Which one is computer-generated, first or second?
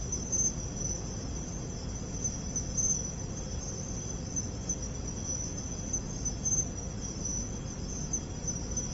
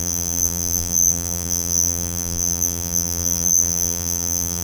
second